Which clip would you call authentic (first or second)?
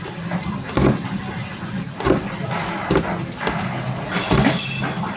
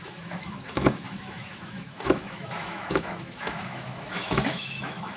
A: first